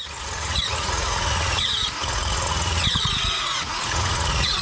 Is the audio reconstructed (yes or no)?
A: yes